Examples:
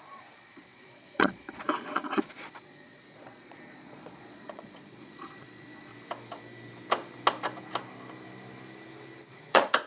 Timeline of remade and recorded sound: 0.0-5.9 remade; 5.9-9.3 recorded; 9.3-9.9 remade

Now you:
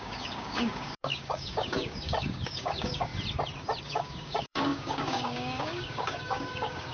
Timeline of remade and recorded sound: 0.0-3.1 remade; 3.1-3.8 recorded; 3.8-6.9 remade